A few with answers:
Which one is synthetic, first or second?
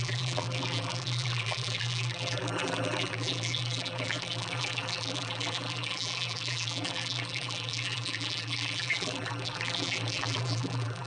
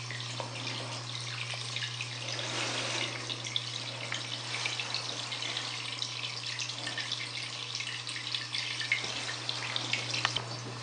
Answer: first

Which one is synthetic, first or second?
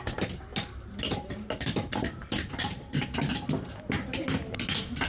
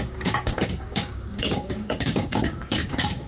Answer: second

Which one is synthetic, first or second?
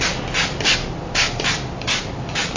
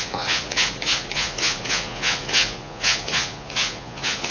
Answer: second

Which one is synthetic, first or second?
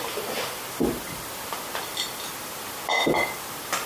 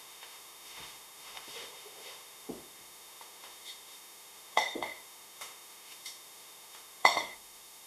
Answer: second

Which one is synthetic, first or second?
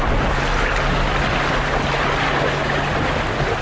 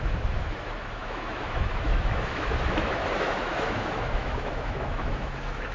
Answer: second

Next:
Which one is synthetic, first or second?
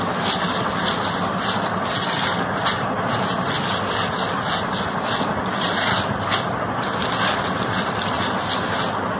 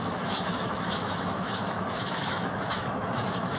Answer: second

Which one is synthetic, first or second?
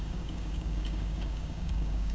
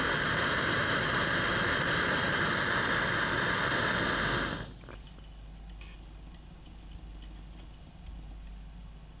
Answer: first